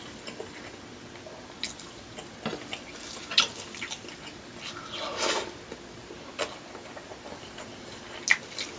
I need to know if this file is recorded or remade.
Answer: recorded